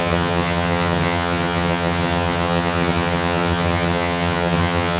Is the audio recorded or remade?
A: remade